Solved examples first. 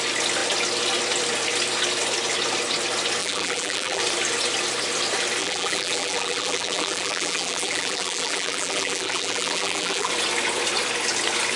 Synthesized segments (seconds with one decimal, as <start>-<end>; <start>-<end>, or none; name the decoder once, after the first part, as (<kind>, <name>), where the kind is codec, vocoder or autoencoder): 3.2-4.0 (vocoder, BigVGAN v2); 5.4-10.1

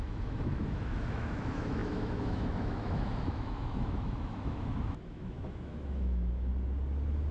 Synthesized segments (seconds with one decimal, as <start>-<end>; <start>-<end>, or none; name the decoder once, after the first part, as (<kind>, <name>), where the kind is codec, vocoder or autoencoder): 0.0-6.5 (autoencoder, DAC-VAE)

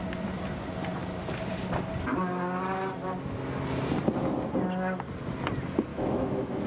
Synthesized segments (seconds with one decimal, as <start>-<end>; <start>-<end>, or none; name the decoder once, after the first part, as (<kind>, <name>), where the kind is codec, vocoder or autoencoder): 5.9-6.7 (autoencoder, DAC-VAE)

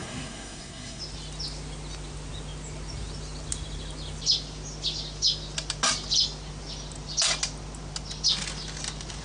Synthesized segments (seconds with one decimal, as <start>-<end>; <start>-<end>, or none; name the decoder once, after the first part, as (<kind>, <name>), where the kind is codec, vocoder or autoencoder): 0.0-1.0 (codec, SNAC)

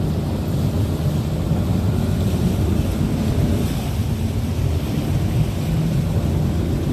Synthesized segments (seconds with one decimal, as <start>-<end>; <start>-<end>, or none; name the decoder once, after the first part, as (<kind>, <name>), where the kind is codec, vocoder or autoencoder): 1.7-3.3 (vocoder, BigVGAN v2); 4.0-4.9

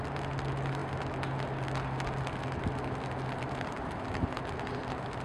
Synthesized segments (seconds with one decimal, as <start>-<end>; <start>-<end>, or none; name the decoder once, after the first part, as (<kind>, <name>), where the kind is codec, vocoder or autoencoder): none

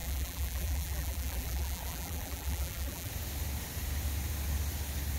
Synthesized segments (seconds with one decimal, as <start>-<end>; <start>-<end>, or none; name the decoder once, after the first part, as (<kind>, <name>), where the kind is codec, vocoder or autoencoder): 0.0-3.1 (vocoder, BigVGAN v2)